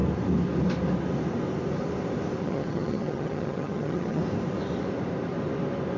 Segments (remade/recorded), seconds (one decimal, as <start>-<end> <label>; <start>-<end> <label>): 0.0-2.4 recorded; 2.4-4.2 remade; 4.2-6.0 recorded